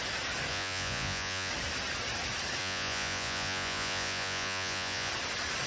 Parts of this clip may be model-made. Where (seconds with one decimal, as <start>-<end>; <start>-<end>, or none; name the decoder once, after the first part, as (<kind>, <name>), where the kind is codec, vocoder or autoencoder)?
0.5-1.5 (vocoder, Vocos); 2.6-5.1